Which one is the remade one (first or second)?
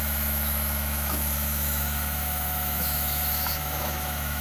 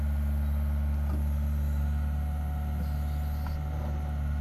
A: first